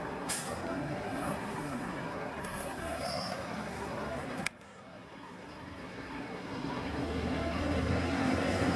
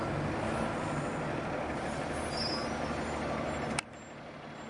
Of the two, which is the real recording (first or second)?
second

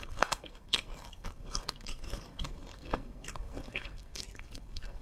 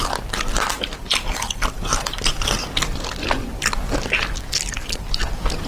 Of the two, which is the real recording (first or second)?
second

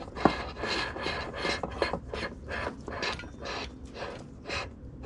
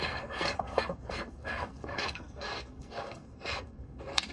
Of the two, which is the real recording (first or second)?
first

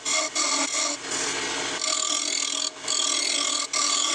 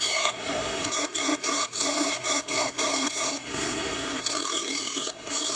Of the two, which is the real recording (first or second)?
first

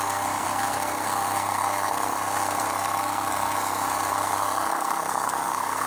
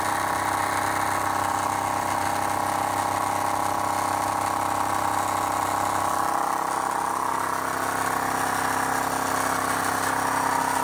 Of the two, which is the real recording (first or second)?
second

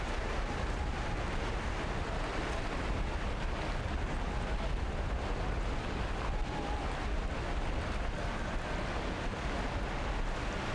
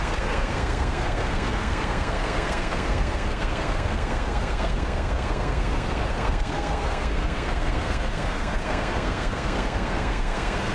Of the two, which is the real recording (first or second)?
first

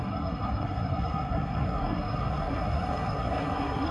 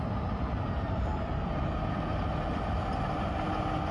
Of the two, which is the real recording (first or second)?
second